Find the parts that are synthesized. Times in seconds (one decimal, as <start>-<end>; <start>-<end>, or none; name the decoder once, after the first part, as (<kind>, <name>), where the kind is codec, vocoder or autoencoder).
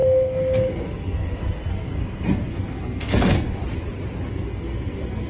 0.0-3.6 (codec, SNAC); 4.3-5.3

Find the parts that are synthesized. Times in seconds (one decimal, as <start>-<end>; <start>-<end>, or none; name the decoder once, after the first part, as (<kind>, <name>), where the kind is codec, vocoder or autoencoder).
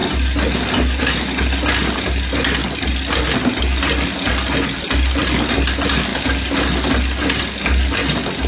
none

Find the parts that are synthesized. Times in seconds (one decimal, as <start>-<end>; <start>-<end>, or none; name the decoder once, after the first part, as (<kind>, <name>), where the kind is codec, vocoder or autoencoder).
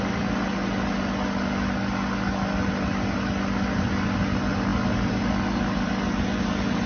none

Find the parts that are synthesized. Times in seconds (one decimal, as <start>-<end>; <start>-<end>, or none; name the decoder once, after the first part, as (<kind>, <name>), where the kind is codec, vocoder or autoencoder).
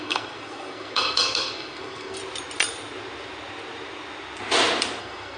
0.0-2.2 (codec, SNAC); 5.0-5.4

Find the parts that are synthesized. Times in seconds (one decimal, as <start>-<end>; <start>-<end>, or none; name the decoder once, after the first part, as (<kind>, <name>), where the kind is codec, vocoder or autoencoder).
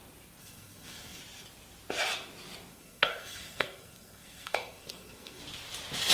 0.4-1.2 (codec, SNAC); 2.7-5.4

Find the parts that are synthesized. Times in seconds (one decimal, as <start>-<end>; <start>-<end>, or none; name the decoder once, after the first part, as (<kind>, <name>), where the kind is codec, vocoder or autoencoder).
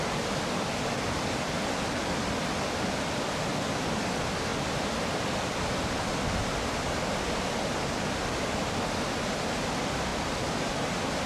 none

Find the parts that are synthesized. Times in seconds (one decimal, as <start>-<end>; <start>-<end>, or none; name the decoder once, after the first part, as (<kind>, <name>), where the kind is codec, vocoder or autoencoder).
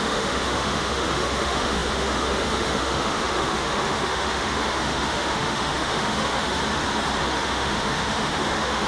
0.0-6.6 (autoencoder, DAC-VAE); 7.2-8.9